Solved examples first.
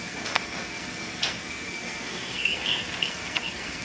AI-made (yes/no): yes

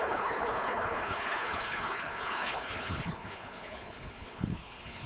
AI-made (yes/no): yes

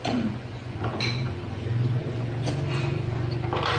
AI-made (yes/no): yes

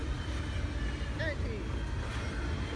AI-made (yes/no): no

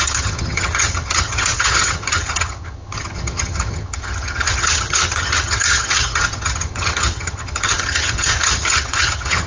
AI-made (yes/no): yes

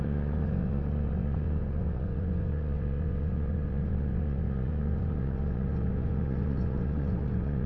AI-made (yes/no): yes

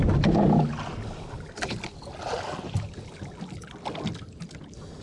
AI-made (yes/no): no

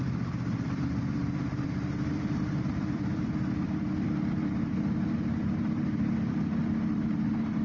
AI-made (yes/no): yes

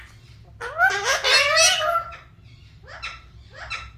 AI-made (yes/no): no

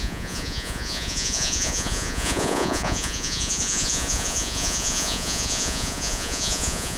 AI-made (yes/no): yes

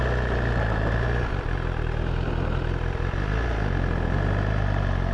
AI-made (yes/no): no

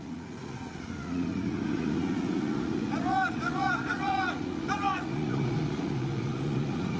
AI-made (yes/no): yes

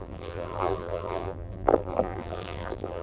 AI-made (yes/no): yes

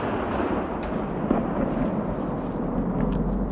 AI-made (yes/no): no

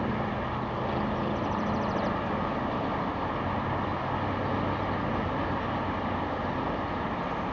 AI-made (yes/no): no